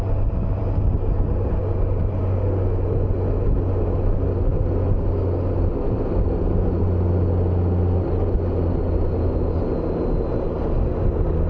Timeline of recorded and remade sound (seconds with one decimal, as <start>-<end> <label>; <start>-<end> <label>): 0.0-11.5 recorded